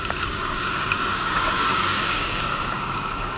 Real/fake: fake